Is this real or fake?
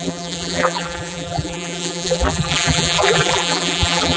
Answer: fake